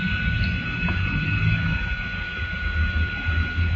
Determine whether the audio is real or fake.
real